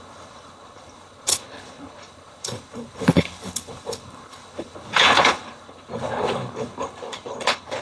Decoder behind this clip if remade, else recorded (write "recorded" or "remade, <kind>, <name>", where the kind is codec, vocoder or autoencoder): remade, codec, HILCodec